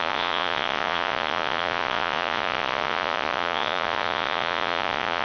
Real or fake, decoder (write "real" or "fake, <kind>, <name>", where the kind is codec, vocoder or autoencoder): fake, vocoder, Vocos